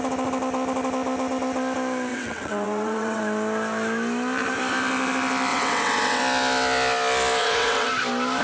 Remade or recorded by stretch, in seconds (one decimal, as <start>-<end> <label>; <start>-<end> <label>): 0.0-2.1 recorded; 2.1-3.2 remade; 3.2-5.5 recorded; 5.5-6.2 remade; 6.2-7.4 recorded; 7.4-7.9 remade; 7.9-8.4 recorded